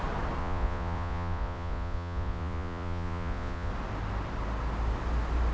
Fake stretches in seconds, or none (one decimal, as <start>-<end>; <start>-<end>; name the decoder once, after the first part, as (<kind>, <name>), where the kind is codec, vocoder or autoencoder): 0.4-3.7 (vocoder, Vocos)